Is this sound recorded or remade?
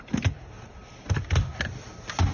recorded